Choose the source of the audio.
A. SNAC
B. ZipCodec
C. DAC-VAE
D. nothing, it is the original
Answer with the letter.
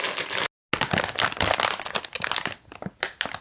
D